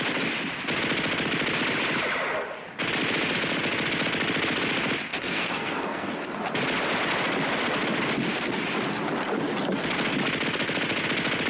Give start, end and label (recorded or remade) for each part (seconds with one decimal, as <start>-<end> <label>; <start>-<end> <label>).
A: 0.0-5.1 recorded; 5.1-6.1 remade; 6.1-11.5 recorded